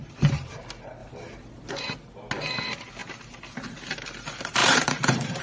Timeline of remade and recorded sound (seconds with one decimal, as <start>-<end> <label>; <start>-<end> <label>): 0.0-0.5 remade; 0.5-1.0 recorded; 1.0-1.7 remade; 1.7-4.6 recorded; 4.6-5.4 remade